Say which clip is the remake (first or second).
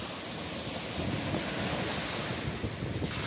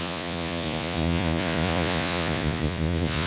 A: second